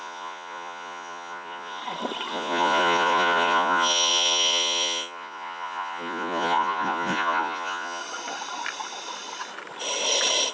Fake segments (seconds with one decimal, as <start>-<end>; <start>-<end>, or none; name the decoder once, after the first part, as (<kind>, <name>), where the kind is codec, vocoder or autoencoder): 0.0-1.8 (vocoder, Vocos); 2.3-8.0